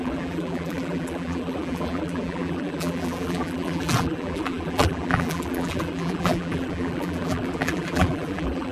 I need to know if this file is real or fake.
fake